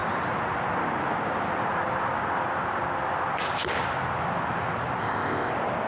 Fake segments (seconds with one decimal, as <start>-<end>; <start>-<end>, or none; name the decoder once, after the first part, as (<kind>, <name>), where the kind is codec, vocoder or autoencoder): 5.0-5.5 (codec, ZipCodec)